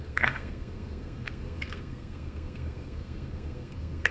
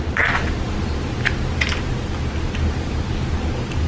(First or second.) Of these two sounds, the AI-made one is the first